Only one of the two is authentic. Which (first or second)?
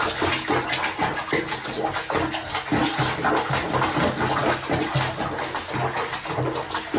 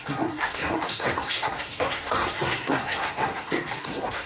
first